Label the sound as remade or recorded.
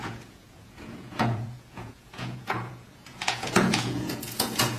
remade